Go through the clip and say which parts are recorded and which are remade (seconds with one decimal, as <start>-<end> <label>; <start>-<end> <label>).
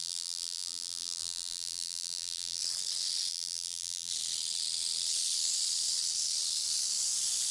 0.0-2.6 remade; 2.6-3.3 recorded; 3.3-4.1 remade; 4.1-7.5 recorded